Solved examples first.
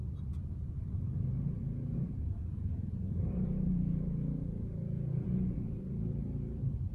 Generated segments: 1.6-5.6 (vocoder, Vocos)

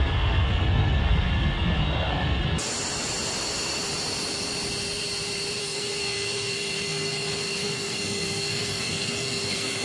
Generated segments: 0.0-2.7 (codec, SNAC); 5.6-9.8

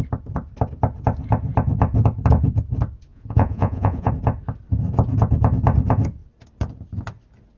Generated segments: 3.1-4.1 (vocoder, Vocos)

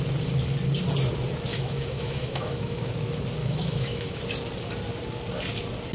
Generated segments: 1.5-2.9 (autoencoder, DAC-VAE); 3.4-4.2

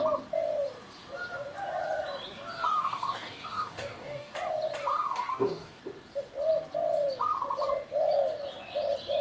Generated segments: 2.5-4.3 (codec, DAC); 4.9-5.8

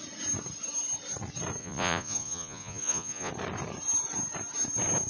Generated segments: 1.6-3.3 (vocoder, Vocos)

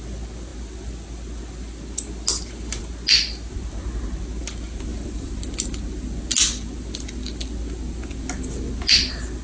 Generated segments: 4.9-5.4 (vocoder, BigVGAN v2)

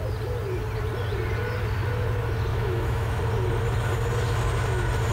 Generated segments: 2.5-3.2 (autoencoder, DAC-VAE)